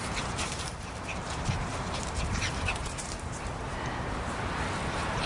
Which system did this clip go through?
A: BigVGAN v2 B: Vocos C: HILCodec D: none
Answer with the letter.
A